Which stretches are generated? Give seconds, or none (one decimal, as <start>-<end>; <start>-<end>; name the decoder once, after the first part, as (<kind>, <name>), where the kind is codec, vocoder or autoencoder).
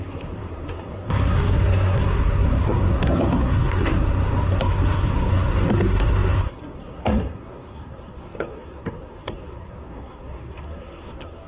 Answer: 0.0-11.5 (codec, SNAC)